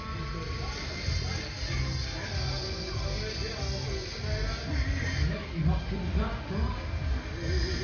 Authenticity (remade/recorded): recorded